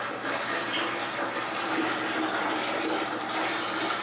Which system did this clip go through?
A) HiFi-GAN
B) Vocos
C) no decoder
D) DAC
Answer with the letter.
C